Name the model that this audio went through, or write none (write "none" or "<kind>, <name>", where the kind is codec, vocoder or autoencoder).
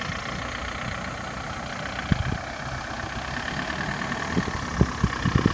none